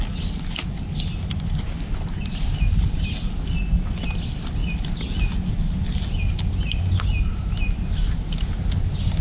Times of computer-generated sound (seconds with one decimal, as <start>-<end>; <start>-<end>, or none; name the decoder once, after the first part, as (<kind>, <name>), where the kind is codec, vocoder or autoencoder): none